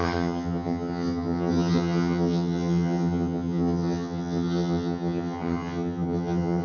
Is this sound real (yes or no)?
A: no